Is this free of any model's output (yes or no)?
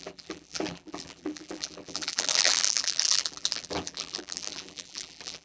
no